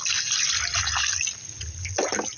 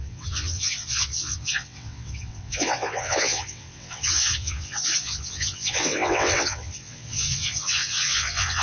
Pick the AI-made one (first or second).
second